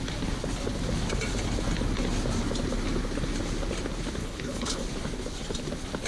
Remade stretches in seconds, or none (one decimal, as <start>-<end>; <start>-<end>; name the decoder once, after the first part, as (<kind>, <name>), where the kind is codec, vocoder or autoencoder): 4.2-4.8 (codec, HILCodec)